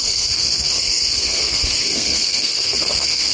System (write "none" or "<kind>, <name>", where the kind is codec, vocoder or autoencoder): codec, SNAC